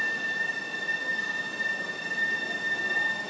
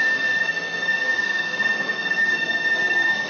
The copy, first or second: second